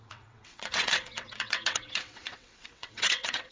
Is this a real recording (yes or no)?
no